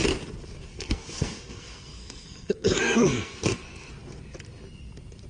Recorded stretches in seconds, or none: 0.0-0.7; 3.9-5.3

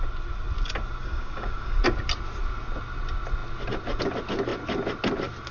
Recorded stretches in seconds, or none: 0.0-1.0; 1.8-5.5